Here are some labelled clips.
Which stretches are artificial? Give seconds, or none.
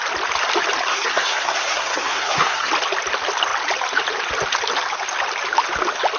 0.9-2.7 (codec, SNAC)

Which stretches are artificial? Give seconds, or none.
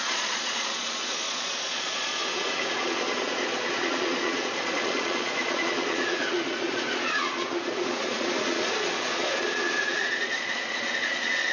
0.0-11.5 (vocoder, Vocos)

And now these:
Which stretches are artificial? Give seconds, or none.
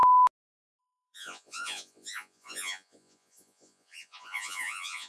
0.8-5.1 (vocoder, Vocos)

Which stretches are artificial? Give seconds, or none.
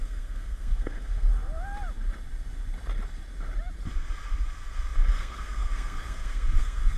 0.0-1.3 (codec, SNAC); 5.1-7.0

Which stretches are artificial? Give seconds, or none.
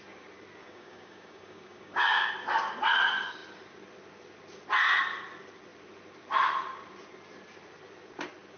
0.6-2.3 (codec, DAC)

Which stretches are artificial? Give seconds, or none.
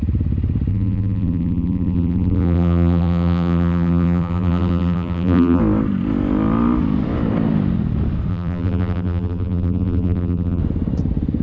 0.7-5.6 (vocoder, BigVGAN v2); 8.3-10.6